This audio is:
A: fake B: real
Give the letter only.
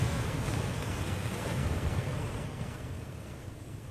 A